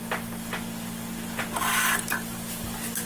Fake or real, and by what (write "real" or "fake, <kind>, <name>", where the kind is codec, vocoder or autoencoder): real